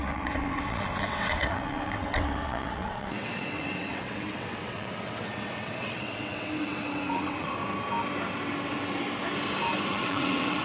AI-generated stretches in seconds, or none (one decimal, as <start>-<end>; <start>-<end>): 0.0-7.6; 9.9-10.6